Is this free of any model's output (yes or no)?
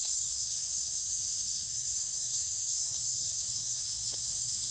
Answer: no